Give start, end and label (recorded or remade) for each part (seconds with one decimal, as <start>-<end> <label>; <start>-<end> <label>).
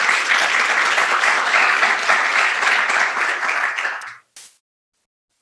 0.0-1.0 recorded; 1.0-1.9 remade; 1.9-5.4 recorded